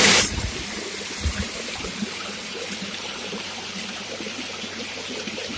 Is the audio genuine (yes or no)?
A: no